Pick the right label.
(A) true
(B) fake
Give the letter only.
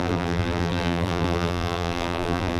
B